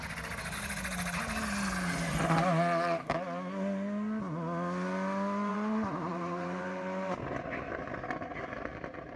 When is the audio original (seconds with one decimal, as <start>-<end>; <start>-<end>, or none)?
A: 0.0-5.5; 7.3-9.2

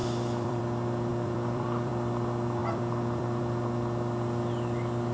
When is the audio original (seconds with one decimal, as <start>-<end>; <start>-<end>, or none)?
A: 0.6-1.1; 1.9-2.6; 3.4-5.1

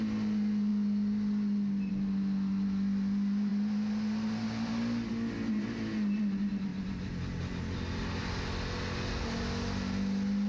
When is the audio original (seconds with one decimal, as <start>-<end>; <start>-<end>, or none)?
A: 0.0-10.5